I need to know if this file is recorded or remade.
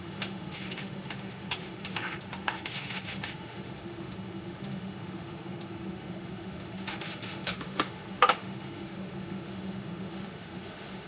remade